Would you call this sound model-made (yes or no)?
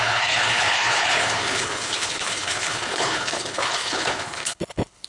yes